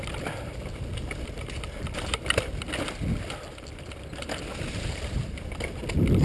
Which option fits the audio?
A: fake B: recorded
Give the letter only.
B